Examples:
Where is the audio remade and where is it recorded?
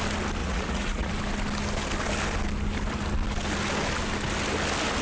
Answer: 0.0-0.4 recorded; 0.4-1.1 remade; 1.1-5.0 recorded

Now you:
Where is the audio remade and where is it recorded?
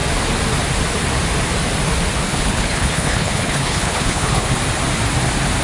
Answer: 0.0-2.3 recorded; 2.3-4.5 remade; 4.5-5.6 recorded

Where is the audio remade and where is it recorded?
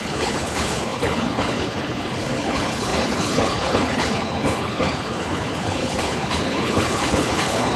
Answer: 0.0-7.8 remade